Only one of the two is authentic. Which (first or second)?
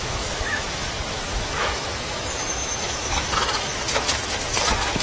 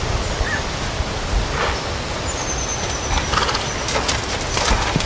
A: second